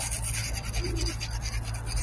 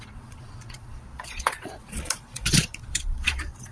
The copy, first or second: second